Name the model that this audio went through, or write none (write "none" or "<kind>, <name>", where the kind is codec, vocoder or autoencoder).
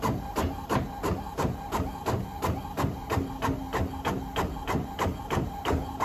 none